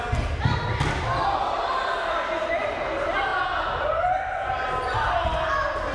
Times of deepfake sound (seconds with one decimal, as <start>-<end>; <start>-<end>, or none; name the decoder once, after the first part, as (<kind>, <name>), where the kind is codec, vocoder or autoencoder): none